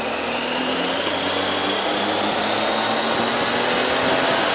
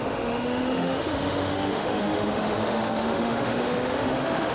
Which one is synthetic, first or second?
second